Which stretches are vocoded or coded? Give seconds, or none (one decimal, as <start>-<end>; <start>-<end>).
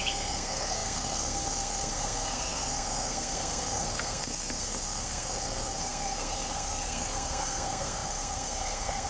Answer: 0.0-9.1